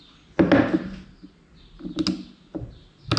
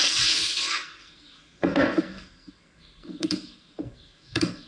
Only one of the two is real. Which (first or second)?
first